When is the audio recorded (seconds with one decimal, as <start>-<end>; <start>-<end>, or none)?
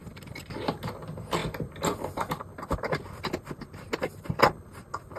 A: 0.0-5.2